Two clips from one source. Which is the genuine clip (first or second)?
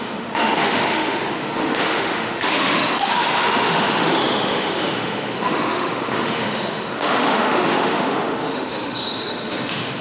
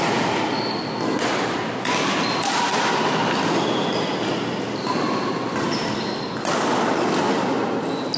second